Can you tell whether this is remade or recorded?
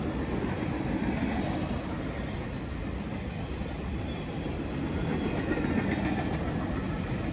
recorded